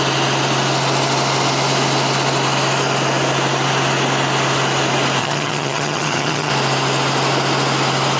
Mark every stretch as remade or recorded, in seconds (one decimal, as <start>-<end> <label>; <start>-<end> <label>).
0.0-5.2 recorded; 5.2-6.5 remade; 6.5-8.2 recorded